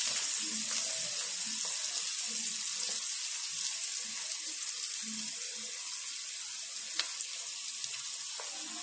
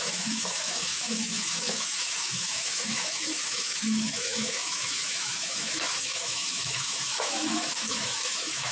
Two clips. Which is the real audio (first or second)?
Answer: first